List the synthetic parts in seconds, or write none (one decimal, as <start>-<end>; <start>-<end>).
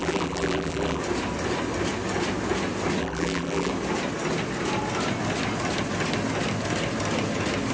0.0-1.0; 3.0-3.7